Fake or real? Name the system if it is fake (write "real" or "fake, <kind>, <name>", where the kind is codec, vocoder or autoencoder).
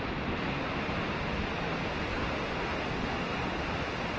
real